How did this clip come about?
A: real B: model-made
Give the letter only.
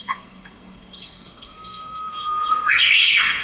B